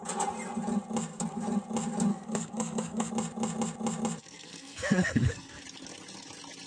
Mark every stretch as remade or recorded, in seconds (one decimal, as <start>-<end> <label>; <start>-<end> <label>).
0.0-2.1 recorded; 2.1-3.1 remade; 3.1-4.2 recorded; 4.2-5.6 remade; 5.6-6.7 recorded